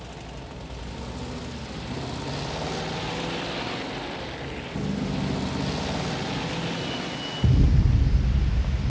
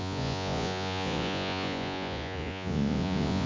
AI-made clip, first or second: second